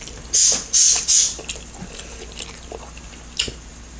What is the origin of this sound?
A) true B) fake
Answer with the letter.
A